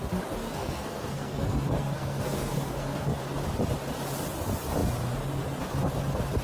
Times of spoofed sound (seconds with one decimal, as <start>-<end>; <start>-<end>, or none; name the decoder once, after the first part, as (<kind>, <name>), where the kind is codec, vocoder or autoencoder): 0.4-3.2 (codec, SNAC)